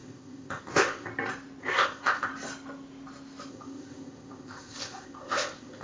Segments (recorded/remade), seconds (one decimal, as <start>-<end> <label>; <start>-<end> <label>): 0.0-1.1 remade; 1.1-1.6 recorded; 1.6-2.3 remade; 2.3-3.5 recorded; 3.5-5.8 remade